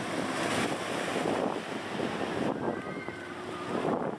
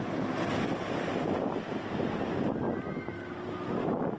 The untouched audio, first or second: second